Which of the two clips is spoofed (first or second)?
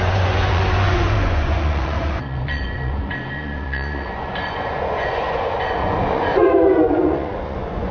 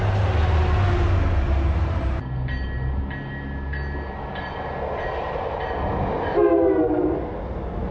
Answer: first